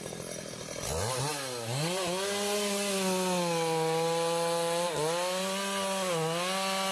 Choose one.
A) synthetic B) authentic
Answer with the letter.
B